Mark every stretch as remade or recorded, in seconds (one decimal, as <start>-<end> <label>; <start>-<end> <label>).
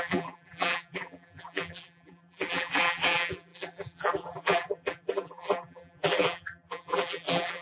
0.0-7.6 remade